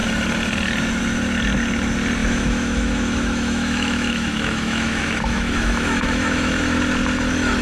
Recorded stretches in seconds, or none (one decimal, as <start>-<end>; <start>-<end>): 0.0-2.2; 6.8-7.6